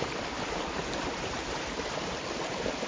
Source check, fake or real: fake